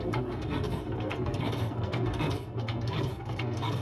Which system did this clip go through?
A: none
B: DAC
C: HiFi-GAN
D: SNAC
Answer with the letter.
D